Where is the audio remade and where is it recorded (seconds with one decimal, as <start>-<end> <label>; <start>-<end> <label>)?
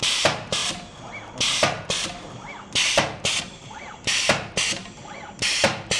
0.0-0.6 remade; 0.6-3.4 recorded; 3.4-6.0 remade